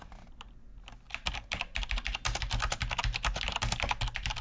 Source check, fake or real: real